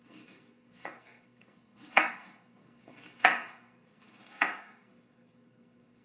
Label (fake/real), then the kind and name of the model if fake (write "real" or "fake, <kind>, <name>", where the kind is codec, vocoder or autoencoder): fake, codec, SNAC